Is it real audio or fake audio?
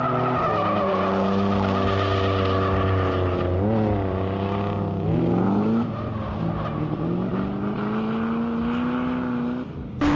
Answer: real